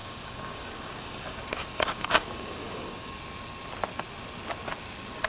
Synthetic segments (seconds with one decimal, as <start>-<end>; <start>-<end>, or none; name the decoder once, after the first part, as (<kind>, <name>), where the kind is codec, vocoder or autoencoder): 0.0-3.2 (codec, DAC)